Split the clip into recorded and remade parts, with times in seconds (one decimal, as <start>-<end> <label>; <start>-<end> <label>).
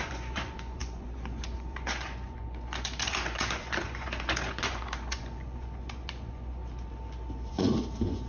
0.0-6.6 remade; 6.6-7.5 recorded; 7.5-8.3 remade